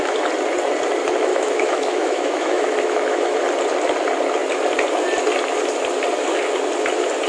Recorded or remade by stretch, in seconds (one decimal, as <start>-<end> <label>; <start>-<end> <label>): 0.0-1.3 recorded; 1.3-3.4 remade; 3.4-7.3 recorded

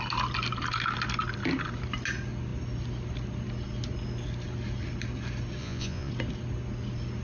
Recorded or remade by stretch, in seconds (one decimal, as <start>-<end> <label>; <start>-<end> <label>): 0.0-5.6 recorded; 5.6-6.1 remade; 6.1-7.2 recorded

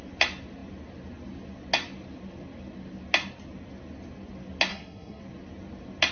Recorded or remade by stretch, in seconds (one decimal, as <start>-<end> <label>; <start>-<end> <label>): 0.0-4.7 recorded; 4.7-5.2 remade; 5.2-6.1 recorded

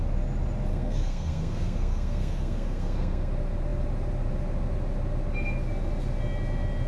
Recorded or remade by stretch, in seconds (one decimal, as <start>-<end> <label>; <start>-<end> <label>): 0.0-0.7 recorded; 0.7-3.3 remade; 3.3-6.9 recorded